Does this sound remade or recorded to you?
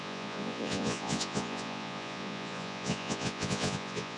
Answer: remade